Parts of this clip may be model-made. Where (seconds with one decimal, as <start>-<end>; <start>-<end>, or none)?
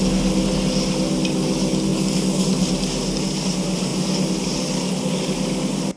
none